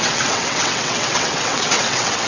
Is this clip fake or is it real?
fake